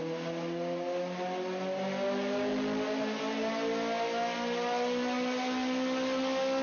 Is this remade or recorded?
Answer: recorded